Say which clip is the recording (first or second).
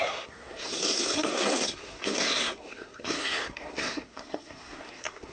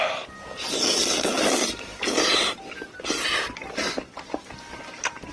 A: second